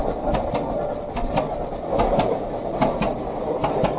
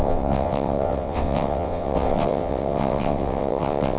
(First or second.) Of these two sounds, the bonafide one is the first